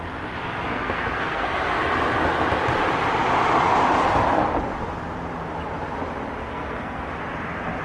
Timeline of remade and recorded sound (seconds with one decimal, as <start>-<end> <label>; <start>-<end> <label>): 0.0-0.4 recorded; 0.4-1.8 remade; 1.8-6.4 recorded; 6.4-7.1 remade; 7.1-7.8 recorded